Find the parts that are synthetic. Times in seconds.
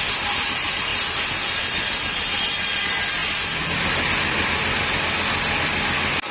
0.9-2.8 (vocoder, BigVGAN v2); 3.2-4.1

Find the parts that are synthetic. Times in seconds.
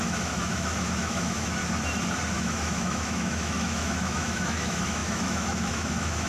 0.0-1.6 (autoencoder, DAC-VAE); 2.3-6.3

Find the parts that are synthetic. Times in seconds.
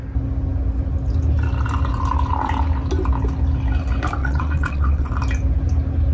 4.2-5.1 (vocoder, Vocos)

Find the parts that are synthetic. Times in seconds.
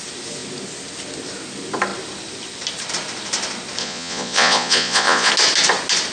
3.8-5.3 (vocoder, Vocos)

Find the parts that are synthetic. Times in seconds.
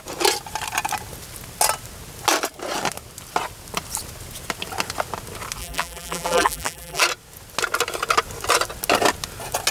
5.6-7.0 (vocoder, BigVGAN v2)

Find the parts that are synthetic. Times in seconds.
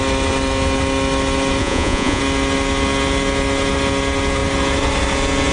1.6-2.2 (vocoder, Vocos)